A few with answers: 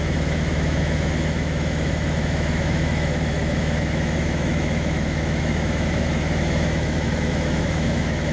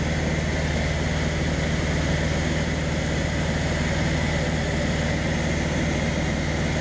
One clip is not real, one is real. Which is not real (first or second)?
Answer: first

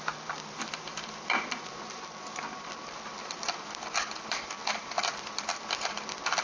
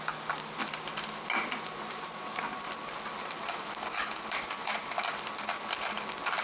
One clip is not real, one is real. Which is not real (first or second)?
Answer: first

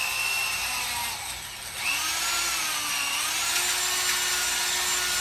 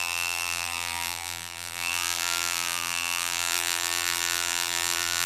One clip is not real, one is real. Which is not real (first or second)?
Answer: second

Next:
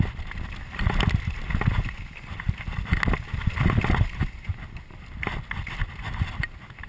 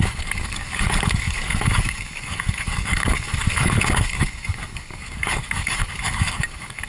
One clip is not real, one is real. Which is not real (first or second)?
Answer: second